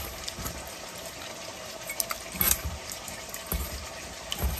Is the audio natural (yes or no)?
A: yes